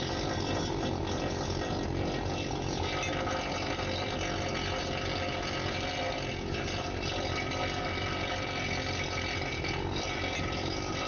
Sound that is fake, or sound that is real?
real